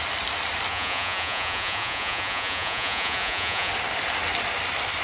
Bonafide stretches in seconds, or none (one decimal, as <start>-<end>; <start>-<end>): 0.0-0.7; 3.7-5.0